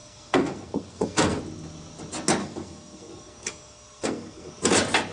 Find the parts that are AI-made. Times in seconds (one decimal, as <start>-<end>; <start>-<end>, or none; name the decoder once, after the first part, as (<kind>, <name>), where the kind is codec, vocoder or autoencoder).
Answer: 0.0-1.4 (codec, SNAC); 2.4-4.5